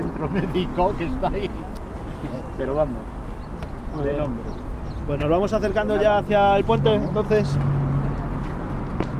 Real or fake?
real